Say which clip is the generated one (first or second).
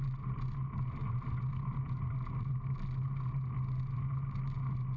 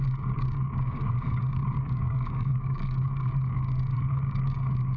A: second